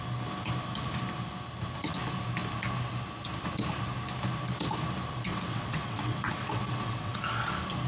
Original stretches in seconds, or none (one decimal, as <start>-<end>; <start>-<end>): 0.0-5.3; 7.2-7.9